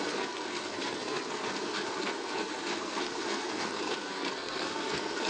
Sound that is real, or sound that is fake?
fake